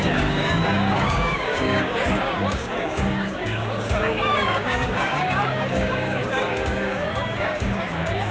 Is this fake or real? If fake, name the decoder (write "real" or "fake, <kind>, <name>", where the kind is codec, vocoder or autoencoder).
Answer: fake, codec, DAC